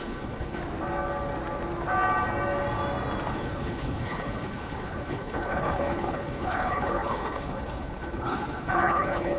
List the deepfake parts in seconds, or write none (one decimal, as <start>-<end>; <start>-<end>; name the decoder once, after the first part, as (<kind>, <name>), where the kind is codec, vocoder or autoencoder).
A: 0.0-0.6 (codec, HILCodec); 3.3-9.4